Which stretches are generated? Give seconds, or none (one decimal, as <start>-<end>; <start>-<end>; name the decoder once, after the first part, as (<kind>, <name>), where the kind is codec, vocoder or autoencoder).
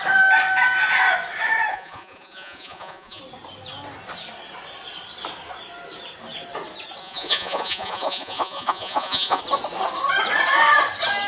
1.7-3.2 (vocoder, Vocos); 7.0-9.4